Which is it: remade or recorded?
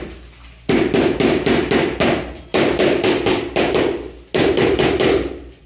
recorded